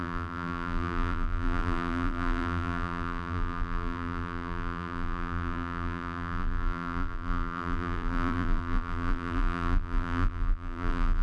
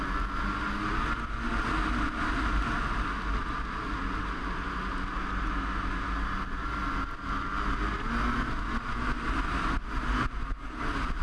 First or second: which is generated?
first